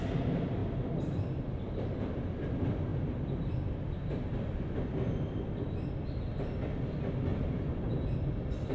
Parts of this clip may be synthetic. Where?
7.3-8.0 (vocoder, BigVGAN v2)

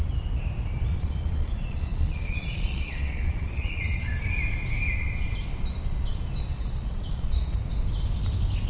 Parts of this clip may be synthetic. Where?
0.9-4.2 (vocoder, Vocos); 6.5-7.7